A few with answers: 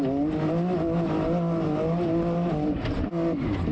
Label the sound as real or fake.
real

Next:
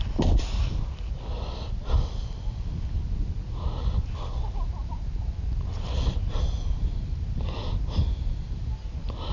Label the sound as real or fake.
real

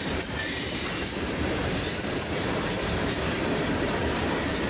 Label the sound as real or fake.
fake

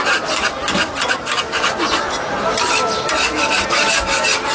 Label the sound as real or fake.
real